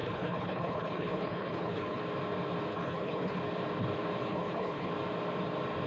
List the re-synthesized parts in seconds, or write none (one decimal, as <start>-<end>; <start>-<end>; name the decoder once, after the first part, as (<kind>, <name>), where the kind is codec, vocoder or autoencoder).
0.0-2.0 (codec, HILCodec); 2.7-3.4; 4.2-4.9